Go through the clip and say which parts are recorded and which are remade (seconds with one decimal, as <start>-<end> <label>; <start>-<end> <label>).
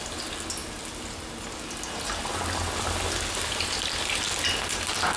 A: 0.0-5.2 recorded